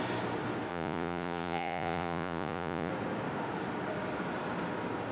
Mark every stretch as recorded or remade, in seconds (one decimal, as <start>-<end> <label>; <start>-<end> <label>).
0.0-0.7 recorded; 0.7-2.9 remade; 2.9-5.1 recorded